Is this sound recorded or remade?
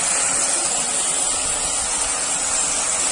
recorded